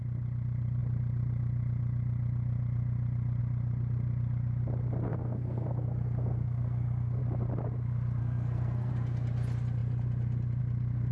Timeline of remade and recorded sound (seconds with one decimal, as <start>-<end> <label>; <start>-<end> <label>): 0.0-5.1 recorded; 5.1-7.2 remade; 7.2-8.2 recorded; 8.2-8.9 remade; 8.9-11.1 recorded